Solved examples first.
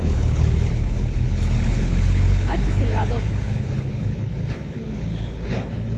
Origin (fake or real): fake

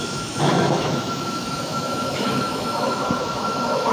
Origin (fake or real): fake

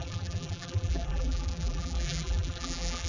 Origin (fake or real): fake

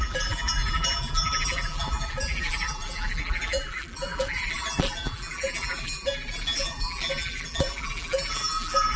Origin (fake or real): fake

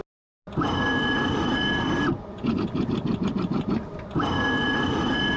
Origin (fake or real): real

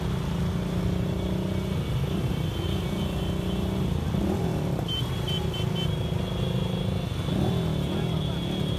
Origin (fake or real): real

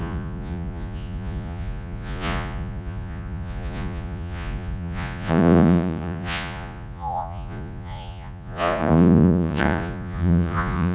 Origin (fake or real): fake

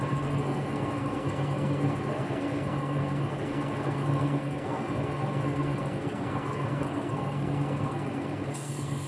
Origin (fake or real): fake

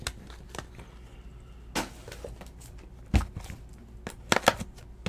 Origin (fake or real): real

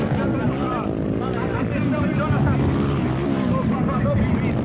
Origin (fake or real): real